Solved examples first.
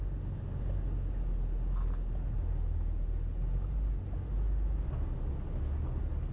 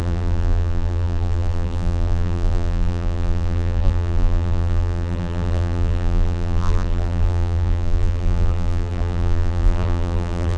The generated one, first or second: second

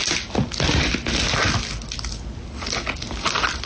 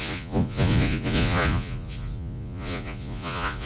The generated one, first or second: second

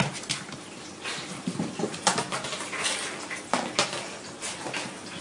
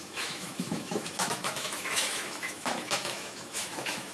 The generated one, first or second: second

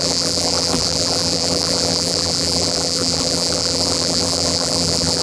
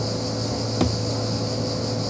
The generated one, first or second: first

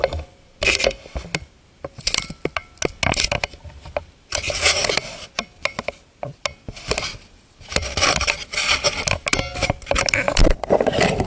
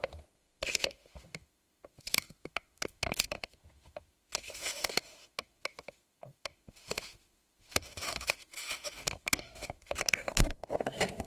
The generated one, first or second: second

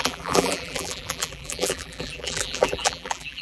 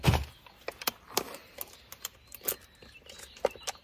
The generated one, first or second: first